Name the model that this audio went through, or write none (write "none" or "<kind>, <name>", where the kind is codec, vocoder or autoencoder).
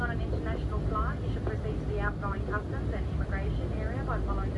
none